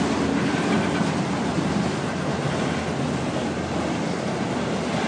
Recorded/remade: recorded